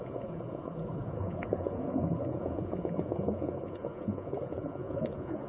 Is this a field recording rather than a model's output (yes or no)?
no